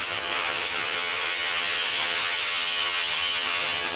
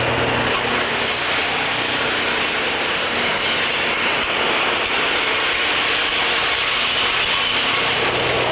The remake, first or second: first